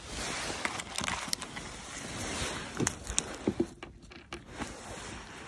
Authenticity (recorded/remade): recorded